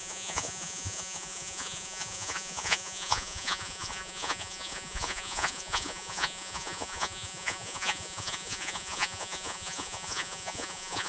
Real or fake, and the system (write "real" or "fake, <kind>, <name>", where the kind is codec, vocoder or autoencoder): fake, vocoder, Vocos